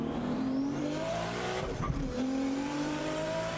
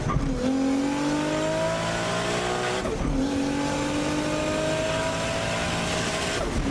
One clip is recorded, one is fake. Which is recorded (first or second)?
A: second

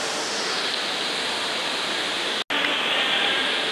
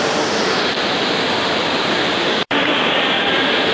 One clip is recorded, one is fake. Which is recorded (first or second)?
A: first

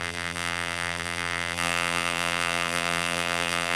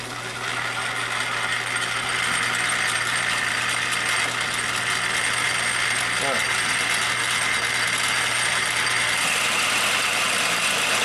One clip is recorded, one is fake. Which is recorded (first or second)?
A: second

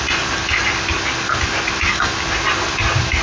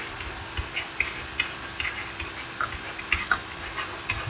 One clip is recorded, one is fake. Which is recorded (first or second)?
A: first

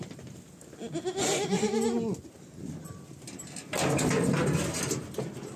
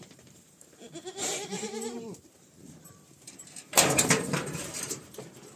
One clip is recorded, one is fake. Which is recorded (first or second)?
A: first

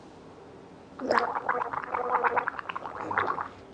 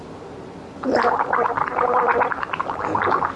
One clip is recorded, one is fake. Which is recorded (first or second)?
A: first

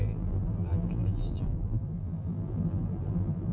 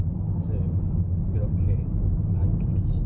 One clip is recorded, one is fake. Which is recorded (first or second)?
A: second